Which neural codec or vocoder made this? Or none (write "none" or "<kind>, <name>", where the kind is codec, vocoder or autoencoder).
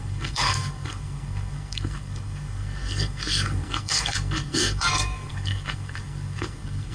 codec, SNAC